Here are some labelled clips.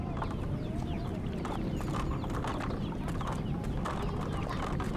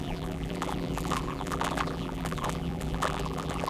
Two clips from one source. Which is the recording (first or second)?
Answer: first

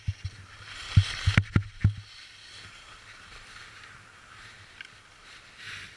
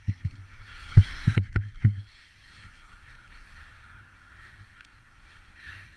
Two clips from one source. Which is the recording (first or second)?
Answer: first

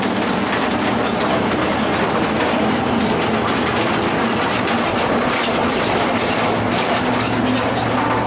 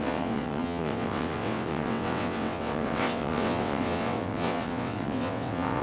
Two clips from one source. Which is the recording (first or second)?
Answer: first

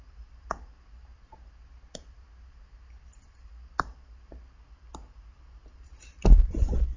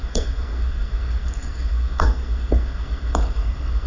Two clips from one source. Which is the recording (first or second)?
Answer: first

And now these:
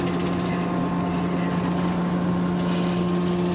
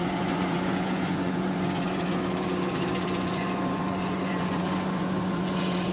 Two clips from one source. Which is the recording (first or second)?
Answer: first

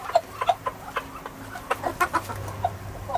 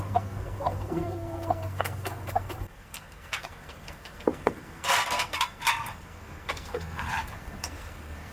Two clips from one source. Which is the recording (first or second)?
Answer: first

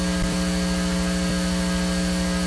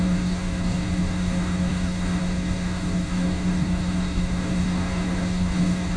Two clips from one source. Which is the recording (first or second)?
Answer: first